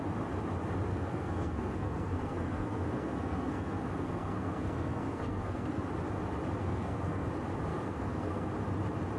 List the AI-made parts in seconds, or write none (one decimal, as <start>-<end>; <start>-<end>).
0.9-5.8; 6.6-7.3; 7.7-8.5